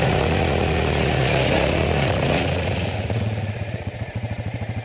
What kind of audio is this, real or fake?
fake